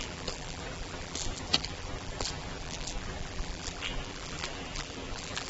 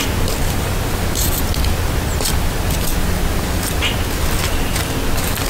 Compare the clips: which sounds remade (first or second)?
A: first